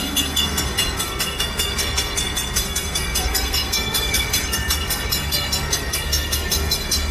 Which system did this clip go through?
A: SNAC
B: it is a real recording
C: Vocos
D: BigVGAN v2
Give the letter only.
A